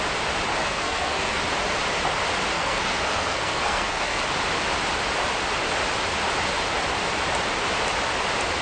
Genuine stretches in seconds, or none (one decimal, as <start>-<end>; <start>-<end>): 0.0-0.6; 1.4-2.5; 4.2-8.6